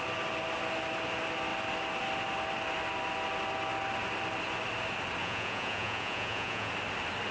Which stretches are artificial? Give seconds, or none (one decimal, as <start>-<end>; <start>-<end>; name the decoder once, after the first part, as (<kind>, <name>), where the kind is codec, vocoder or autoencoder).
5.2-6.7 (vocoder, Vocos)